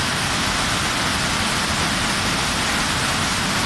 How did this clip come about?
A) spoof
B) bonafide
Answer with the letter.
B